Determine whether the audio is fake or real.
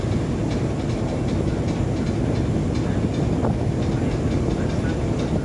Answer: real